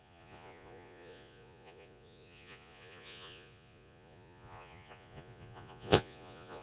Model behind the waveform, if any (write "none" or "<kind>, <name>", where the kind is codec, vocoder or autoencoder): vocoder, Vocos